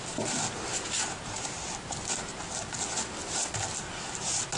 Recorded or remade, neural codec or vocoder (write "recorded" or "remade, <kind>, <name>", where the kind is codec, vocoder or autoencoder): recorded